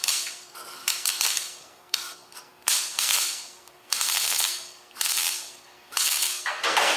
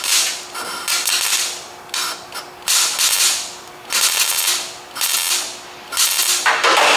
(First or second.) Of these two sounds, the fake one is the first